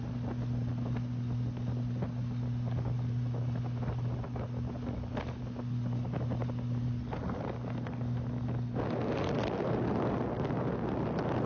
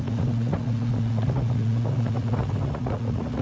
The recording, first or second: first